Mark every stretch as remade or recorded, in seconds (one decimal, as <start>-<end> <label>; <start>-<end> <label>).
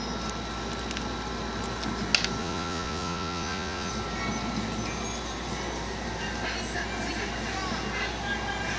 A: 0.0-2.4 recorded; 2.4-3.9 remade; 3.9-8.8 recorded